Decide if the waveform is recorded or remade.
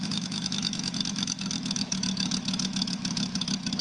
remade